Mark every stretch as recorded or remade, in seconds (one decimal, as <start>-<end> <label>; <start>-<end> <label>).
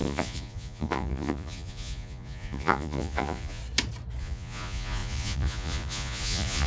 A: 0.0-3.6 remade; 3.6-4.2 recorded; 4.2-6.7 remade